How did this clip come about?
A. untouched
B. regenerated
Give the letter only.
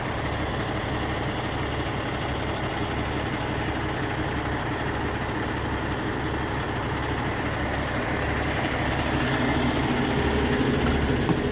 A